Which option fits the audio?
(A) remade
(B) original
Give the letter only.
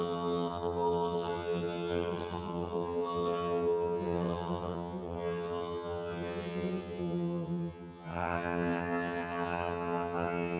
A